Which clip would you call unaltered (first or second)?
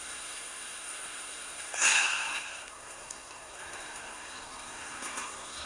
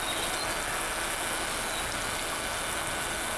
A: second